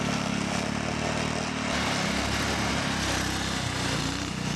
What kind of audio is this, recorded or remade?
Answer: recorded